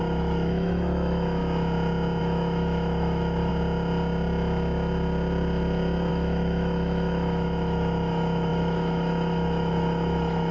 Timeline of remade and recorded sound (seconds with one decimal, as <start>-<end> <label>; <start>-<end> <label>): 0.0-1.4 remade; 1.4-2.2 recorded; 2.2-3.5 remade; 3.5-6.1 recorded; 6.1-10.5 remade